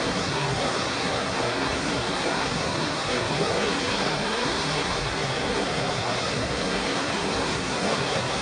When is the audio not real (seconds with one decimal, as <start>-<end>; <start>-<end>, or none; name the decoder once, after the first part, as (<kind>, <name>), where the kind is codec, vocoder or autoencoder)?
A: 0.0-8.4 (codec, SNAC)